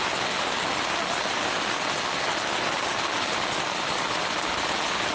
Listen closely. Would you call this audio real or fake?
real